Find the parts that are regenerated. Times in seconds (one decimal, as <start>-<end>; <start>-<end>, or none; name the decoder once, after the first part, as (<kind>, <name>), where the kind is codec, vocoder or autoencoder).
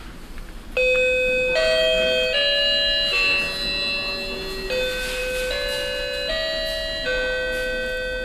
none